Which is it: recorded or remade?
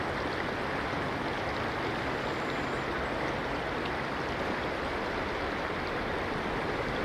recorded